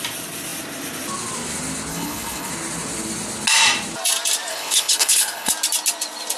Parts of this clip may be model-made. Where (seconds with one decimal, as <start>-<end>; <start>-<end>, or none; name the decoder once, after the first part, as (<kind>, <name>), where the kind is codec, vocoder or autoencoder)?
1.9-2.5 (codec, HILCodec); 4.5-5.5